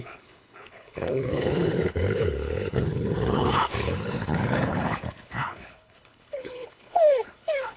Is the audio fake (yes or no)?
yes